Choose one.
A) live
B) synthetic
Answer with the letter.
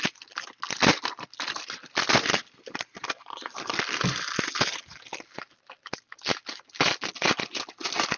A